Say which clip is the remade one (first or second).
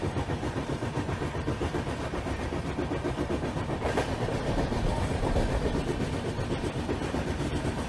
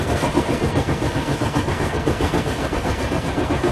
second